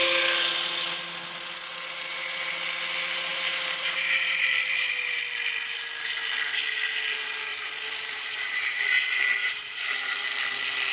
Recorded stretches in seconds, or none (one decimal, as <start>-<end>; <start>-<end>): 0.0-3.3; 5.2-7.5; 8.8-9.4; 10.1-10.9